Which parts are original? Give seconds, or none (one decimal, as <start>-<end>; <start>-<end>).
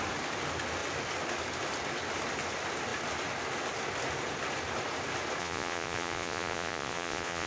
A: 0.0-5.4